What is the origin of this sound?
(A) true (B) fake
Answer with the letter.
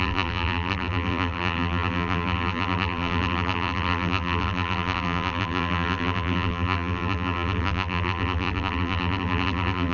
B